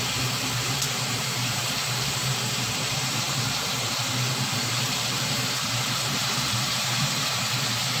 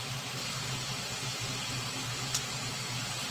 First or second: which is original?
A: second